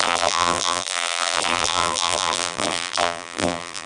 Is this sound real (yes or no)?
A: no